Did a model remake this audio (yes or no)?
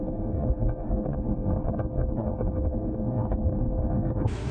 yes